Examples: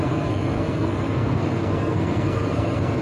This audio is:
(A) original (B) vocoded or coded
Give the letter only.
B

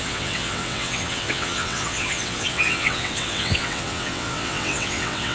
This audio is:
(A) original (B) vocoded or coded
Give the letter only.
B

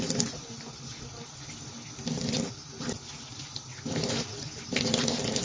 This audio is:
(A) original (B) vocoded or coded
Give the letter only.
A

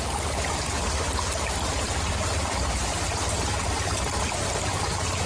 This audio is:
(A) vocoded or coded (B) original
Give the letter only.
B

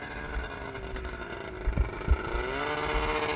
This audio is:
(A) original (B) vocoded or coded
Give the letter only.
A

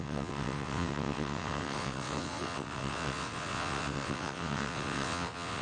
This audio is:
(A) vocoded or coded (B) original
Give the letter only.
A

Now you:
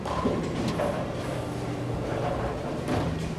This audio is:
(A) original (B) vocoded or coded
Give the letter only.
B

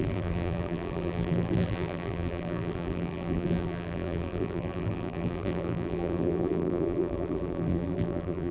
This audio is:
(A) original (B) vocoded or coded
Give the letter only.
B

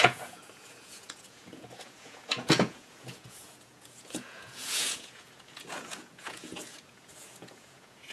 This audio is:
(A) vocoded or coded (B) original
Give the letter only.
A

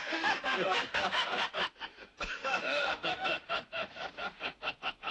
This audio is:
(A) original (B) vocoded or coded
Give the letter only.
B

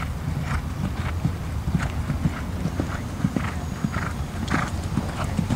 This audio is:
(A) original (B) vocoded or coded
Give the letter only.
A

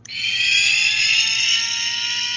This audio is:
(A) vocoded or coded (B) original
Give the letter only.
B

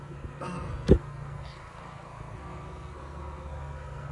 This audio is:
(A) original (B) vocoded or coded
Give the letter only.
B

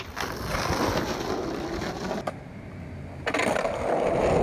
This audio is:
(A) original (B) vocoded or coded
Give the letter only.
A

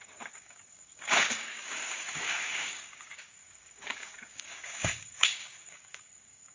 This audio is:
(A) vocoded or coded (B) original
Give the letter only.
A